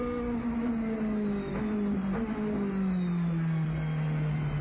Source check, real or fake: real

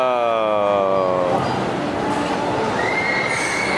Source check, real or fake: real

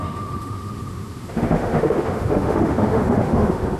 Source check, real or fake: fake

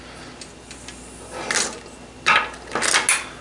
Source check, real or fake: real